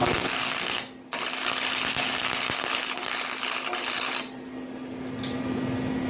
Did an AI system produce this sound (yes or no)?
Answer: no